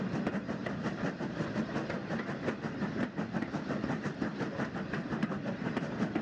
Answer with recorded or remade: recorded